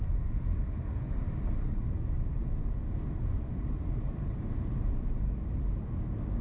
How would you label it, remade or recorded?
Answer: remade